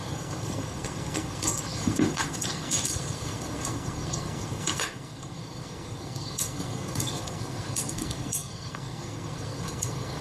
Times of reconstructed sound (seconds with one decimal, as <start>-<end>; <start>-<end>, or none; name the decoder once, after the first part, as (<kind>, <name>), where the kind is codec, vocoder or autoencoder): 0.0-10.2 (codec, SNAC)